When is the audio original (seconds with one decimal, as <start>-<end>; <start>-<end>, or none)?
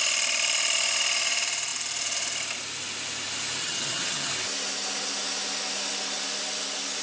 0.0-3.6; 4.3-7.0